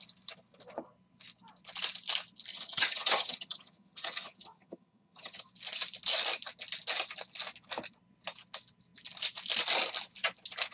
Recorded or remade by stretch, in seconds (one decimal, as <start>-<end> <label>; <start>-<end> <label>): 0.0-2.5 recorded; 2.5-5.4 remade; 5.4-10.7 recorded